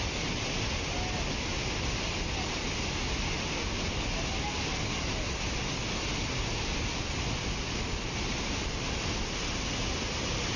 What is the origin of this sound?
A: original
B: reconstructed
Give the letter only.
A